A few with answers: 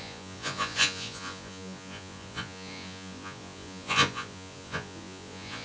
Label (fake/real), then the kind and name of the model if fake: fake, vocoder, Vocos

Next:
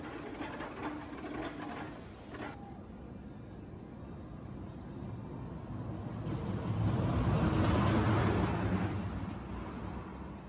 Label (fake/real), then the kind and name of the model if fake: real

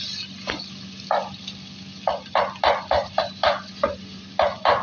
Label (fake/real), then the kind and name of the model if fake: real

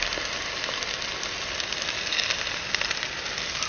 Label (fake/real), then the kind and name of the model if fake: real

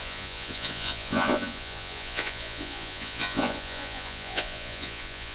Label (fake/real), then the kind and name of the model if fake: fake, vocoder, Vocos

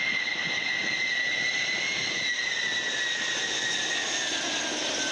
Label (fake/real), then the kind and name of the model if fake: real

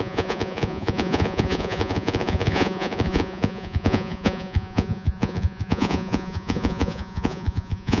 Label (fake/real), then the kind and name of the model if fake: fake, vocoder, Vocos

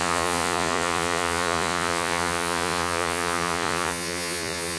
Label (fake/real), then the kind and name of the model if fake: fake, vocoder, Vocos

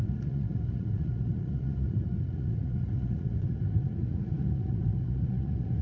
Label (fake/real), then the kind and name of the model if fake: fake, vocoder, Vocos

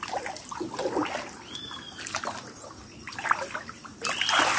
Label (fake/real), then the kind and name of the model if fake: real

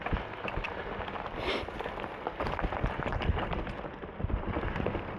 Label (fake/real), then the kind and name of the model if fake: real